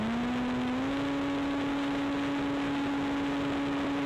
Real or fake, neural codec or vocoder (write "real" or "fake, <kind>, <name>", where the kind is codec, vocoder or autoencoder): real